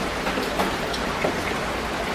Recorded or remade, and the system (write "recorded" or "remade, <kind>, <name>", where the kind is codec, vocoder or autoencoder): recorded